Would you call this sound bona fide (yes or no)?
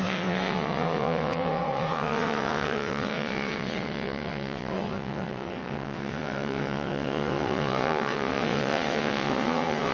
no